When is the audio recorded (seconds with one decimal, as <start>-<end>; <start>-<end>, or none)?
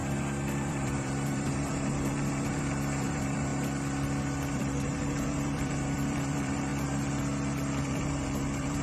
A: 0.0-0.7; 3.5-4.5; 6.7-7.8